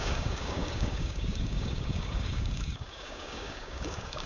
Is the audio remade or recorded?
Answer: remade